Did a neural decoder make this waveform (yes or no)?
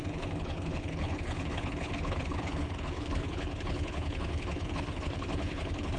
yes